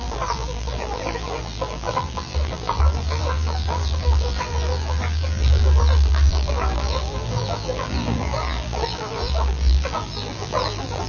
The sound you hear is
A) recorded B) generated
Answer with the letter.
B